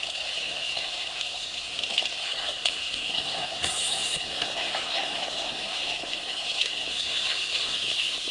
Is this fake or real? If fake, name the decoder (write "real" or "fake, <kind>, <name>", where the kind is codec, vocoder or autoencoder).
fake, codec, SNAC